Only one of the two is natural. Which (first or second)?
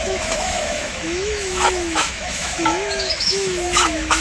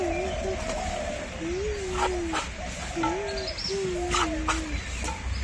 second